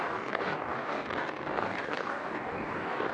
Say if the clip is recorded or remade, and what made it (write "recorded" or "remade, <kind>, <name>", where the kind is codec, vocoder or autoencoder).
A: remade, codec, DAC